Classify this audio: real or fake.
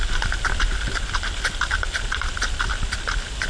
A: real